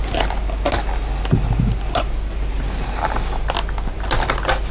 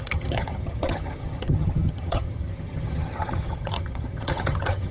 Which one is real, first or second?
first